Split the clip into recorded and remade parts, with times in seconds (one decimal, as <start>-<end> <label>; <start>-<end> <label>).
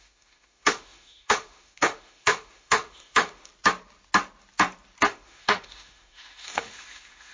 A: 0.0-3.5 remade; 3.5-5.0 recorded; 5.0-7.3 remade